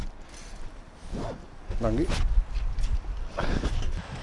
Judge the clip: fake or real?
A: real